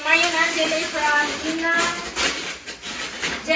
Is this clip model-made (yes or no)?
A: yes